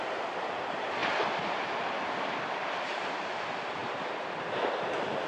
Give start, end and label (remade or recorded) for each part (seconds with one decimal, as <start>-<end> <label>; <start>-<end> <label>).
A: 0.0-5.3 remade